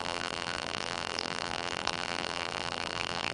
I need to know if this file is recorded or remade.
remade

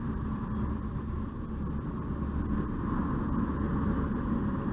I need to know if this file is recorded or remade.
recorded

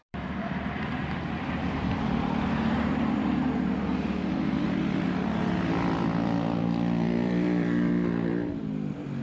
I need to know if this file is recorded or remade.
remade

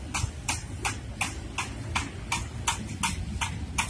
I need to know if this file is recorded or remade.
recorded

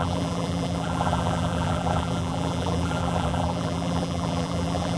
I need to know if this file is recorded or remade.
remade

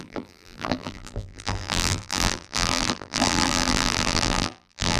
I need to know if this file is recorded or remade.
remade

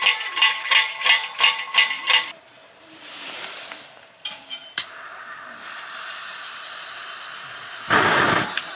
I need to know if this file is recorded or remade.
remade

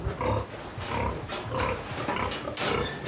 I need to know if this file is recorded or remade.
recorded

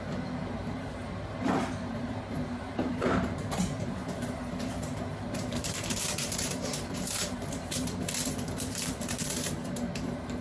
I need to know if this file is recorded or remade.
remade